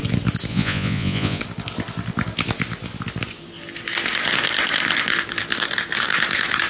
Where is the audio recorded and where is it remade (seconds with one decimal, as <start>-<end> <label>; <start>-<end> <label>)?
0.0-0.5 recorded; 0.5-1.4 remade; 1.4-6.7 recorded